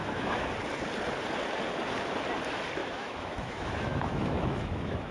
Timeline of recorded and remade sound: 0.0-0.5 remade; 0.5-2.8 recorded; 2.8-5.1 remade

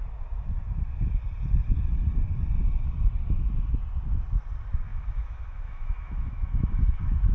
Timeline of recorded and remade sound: 0.0-4.9 recorded; 4.9-7.3 remade

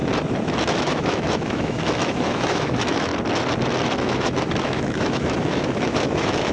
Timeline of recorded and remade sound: 0.0-0.6 recorded; 0.6-3.1 remade; 3.1-4.0 recorded; 4.0-6.5 remade

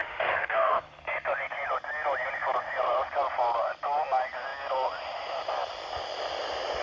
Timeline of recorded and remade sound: 0.0-0.8 remade; 0.8-6.8 recorded